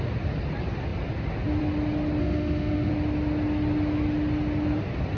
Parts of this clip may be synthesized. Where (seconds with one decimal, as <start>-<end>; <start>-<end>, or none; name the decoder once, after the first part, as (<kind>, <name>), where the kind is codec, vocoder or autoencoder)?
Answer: 2.2-2.9 (autoencoder, DAC-VAE)